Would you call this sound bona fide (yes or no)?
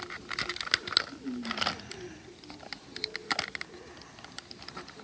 yes